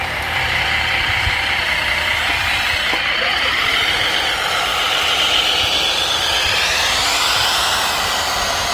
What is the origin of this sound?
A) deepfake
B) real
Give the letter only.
A